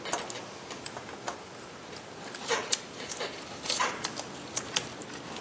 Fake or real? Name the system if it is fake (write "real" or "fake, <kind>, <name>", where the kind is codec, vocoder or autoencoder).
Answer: real